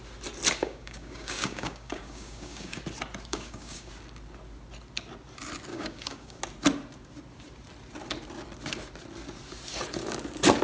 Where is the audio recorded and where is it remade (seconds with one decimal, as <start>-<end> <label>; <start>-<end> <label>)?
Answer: 0.0-0.6 recorded; 0.6-2.8 remade; 2.8-3.3 recorded; 3.3-3.9 remade; 3.9-5.7 recorded; 5.7-6.4 remade; 6.4-10.6 recorded